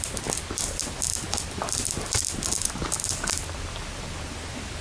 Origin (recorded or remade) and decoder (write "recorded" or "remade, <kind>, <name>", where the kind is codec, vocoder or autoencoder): recorded